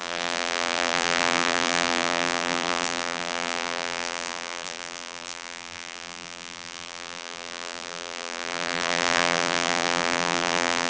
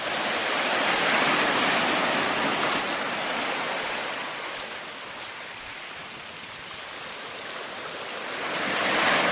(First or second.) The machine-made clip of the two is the first